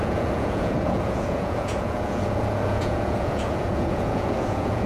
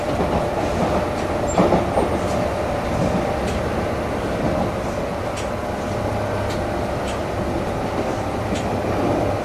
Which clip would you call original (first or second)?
second